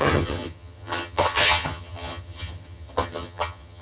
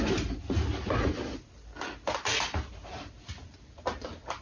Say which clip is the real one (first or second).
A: second